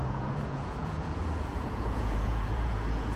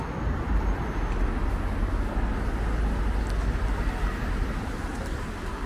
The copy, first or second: first